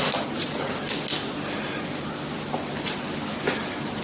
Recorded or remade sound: recorded